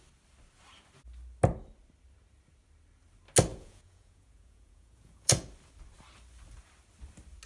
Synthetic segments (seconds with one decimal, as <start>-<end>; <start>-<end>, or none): 3.5-5.5